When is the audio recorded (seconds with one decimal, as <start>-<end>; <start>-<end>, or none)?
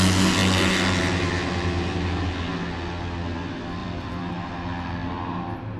0.0-3.8; 4.3-5.8